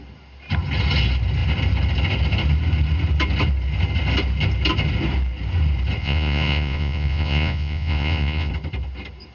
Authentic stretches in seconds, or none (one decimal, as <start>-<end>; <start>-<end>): 0.0-6.0; 8.5-9.3